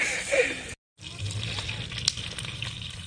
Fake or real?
real